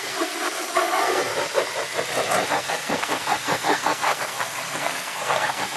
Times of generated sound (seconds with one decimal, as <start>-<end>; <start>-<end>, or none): 0.0-1.3; 2.5-5.8